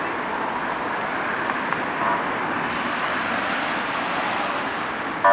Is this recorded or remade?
recorded